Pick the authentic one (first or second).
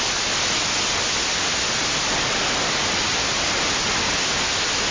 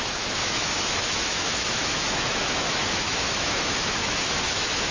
first